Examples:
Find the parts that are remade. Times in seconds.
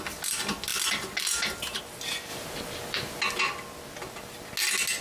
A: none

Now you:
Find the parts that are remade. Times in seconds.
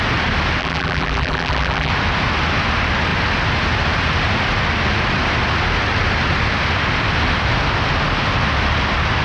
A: 0.6-1.9 (vocoder, BigVGAN v2)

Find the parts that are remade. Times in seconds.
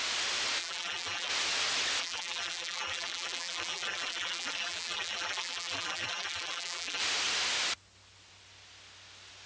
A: 0.6-1.3 (vocoder, BigVGAN v2); 2.0-7.0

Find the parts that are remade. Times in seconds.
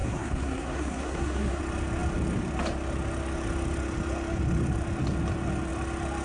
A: 0.0-1.6 (codec, SNAC)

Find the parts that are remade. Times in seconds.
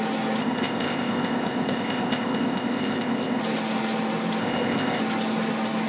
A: 0.4-3.4 (codec, ZipCodec); 4.4-5.0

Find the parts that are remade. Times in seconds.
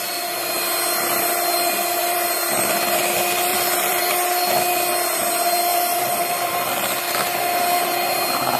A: 2.0-3.0 (vocoder, BigVGAN v2); 3.5-4.1; 5.7-6.7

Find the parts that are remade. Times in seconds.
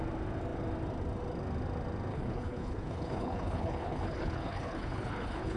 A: 2.1-5.6 (codec, HILCodec)